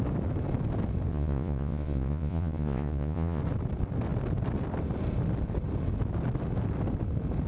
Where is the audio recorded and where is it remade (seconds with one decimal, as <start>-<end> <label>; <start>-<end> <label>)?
0.0-1.1 recorded; 1.1-3.4 remade; 3.4-7.5 recorded